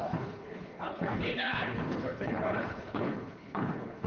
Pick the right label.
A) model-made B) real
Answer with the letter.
A